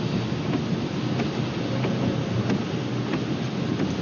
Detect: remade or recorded recorded